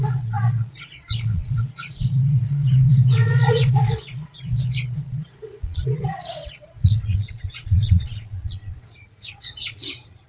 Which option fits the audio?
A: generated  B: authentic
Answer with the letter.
A